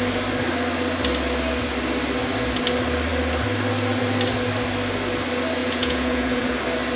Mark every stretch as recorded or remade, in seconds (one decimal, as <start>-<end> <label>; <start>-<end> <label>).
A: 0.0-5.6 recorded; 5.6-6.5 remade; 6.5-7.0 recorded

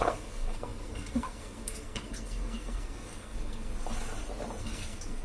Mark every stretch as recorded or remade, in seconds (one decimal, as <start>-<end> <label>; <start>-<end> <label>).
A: 0.0-3.7 remade; 3.7-4.6 recorded; 4.6-5.2 remade

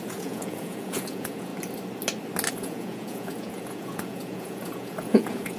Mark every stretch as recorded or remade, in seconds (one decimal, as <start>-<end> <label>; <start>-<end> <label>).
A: 0.0-1.5 remade; 1.5-2.5 recorded; 2.5-5.6 remade